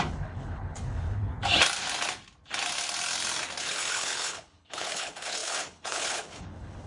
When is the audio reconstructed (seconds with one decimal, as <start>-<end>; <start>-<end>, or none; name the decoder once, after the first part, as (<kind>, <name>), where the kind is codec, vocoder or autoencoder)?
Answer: 0.0-1.3 (codec, HILCodec); 3.6-6.9